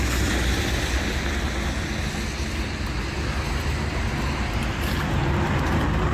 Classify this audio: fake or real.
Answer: real